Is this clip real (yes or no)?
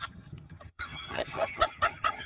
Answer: no